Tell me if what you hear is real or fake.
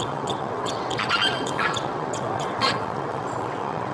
fake